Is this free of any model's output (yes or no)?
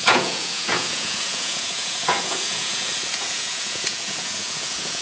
no